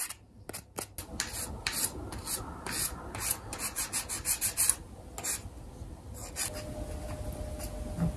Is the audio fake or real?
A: real